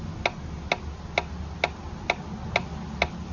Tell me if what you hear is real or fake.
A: real